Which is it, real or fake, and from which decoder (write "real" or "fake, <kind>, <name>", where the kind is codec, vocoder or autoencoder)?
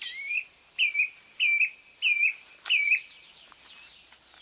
real